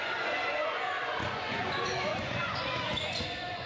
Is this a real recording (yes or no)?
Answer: no